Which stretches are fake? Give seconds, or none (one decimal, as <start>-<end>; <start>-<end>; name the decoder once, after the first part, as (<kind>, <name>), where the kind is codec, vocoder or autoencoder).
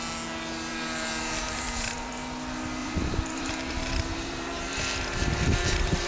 0.7-2.1 (vocoder, BigVGAN v2); 2.8-6.1